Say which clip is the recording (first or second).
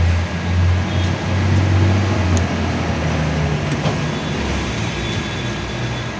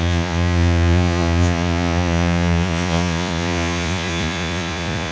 first